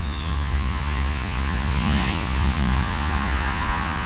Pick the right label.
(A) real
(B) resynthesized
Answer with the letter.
B